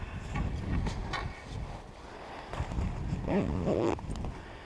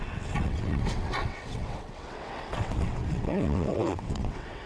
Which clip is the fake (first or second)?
second